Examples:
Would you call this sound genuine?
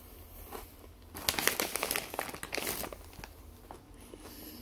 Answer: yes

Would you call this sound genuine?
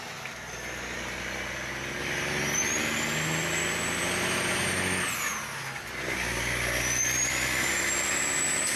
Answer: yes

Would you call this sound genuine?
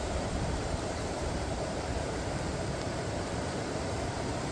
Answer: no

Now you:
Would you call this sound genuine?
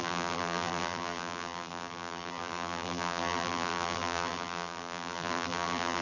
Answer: no